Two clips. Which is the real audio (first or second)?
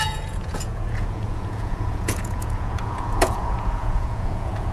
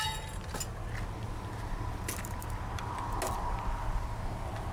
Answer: second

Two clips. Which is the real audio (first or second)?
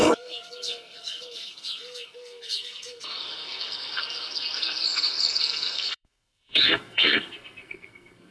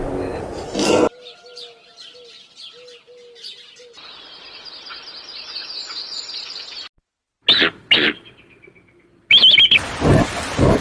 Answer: second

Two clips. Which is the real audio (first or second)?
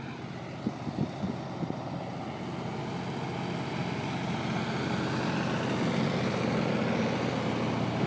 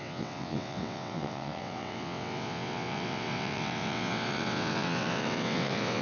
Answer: first